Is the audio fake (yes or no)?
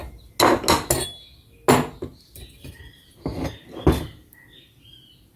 no